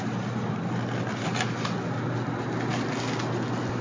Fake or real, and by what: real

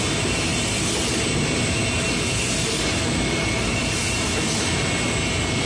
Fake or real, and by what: real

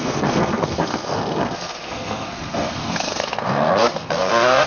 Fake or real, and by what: fake, codec, SNAC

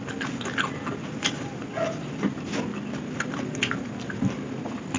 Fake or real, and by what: real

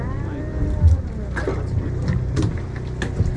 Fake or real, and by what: real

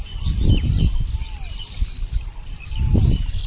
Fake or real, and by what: real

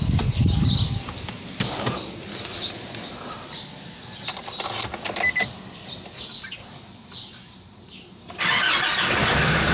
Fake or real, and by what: real